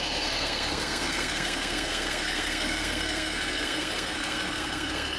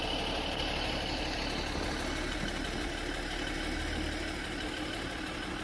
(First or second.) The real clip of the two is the second